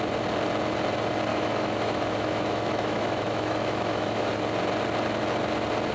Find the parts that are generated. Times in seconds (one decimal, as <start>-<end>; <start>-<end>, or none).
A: 1.3-4.3

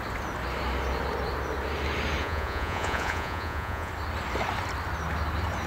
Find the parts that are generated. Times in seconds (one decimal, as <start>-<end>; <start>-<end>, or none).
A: 2.2-3.9

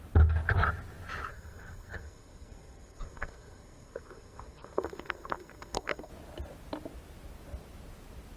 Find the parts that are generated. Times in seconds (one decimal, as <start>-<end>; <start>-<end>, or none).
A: 1.3-6.1

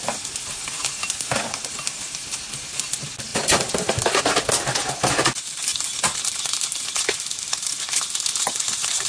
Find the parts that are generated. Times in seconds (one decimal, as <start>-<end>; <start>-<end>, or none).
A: 3.3-4.2; 5.7-9.1

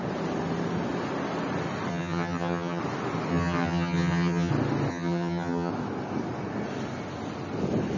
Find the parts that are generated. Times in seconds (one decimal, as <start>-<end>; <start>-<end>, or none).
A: 1.9-2.8; 3.3-4.5; 4.9-5.7